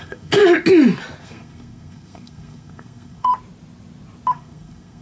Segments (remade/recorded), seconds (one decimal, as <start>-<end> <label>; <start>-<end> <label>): 0.0-0.4 remade; 0.4-1.2 recorded; 1.2-3.3 remade; 3.3-4.3 recorded; 4.3-5.0 remade